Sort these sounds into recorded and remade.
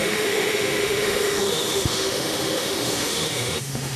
remade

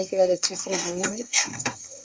remade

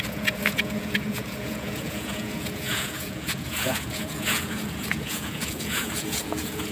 remade